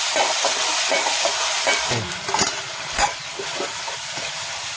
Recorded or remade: recorded